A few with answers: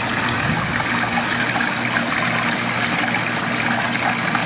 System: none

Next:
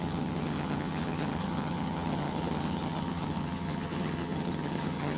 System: vocoder, HiFi-GAN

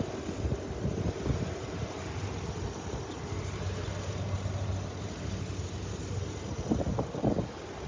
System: none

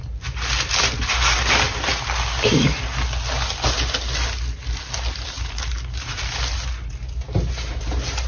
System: none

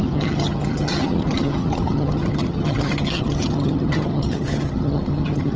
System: vocoder, HiFi-GAN